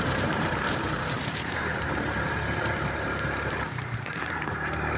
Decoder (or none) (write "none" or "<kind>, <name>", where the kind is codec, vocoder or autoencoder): vocoder, BigVGAN v2